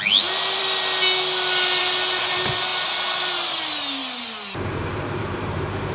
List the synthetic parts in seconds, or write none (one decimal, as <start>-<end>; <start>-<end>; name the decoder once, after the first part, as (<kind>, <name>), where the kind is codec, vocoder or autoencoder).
none